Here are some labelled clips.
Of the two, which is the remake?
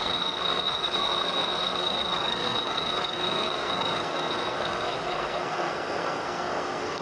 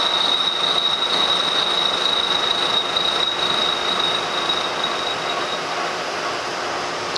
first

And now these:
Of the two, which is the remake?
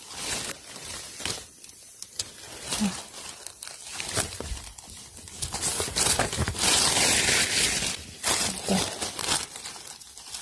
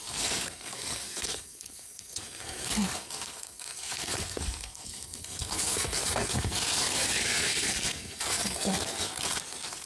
second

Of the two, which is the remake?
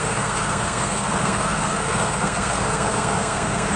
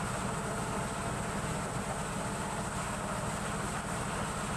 first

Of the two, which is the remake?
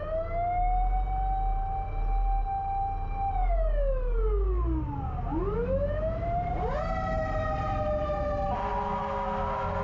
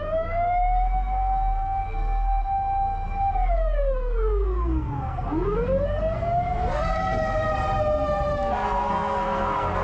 second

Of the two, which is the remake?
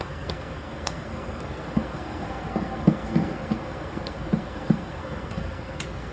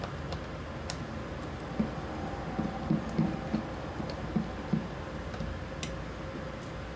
first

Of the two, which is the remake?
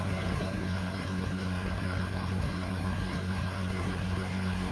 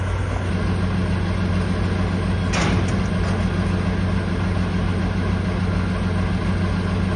first